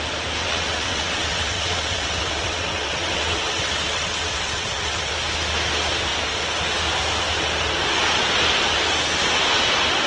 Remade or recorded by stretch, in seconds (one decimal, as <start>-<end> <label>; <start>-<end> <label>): 0.0-0.4 recorded; 0.4-5.1 remade; 5.1-10.1 recorded